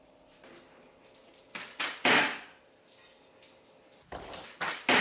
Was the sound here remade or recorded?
recorded